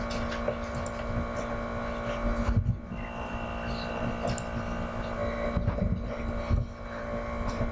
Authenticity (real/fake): real